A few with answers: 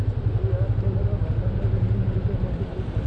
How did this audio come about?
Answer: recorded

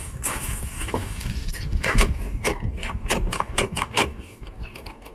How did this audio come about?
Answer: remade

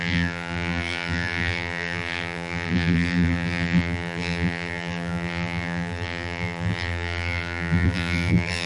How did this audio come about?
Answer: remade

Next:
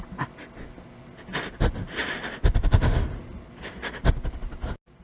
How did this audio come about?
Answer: recorded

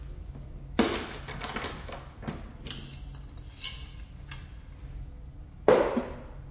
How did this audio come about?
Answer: recorded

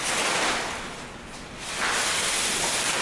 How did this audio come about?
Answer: recorded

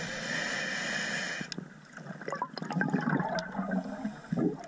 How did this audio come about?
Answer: recorded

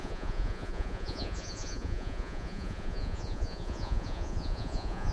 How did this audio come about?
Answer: remade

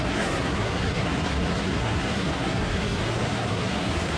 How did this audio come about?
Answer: remade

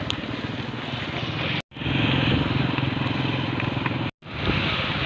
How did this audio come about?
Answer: recorded